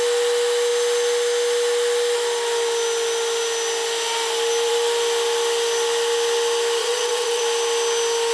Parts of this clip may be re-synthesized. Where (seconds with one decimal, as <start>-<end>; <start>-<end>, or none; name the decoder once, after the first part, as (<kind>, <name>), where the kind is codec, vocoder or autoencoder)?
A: 6.8-7.4 (vocoder, WaveNeXt)